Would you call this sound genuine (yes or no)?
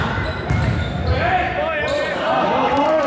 no